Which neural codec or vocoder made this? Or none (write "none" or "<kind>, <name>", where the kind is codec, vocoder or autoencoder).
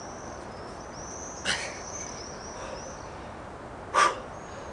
none